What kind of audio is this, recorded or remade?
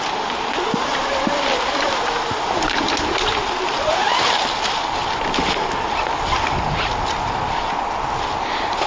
recorded